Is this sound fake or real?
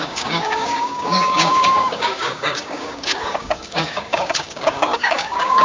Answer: fake